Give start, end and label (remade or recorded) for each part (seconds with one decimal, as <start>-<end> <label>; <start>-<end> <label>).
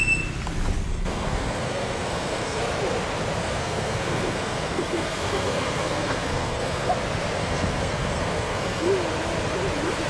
0.0-0.9 recorded; 0.9-2.6 remade; 2.6-3.4 recorded; 3.4-6.9 remade; 6.9-7.4 recorded; 7.4-8.9 remade; 8.9-10.1 recorded